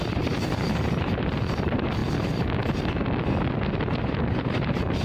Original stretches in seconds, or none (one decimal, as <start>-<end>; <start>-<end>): 2.0-4.0